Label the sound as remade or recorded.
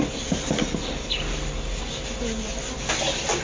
recorded